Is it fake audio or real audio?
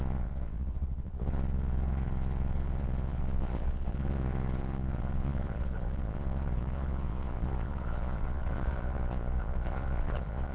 fake